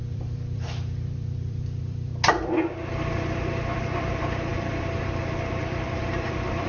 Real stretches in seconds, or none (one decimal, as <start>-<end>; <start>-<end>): 2.1-3.1